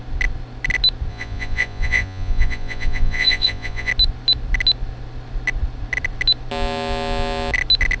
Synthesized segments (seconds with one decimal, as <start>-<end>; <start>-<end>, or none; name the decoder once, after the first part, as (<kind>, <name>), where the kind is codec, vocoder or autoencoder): 1.1-3.9 (vocoder, Vocos)